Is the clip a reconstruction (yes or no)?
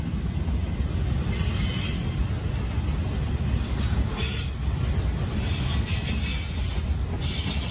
no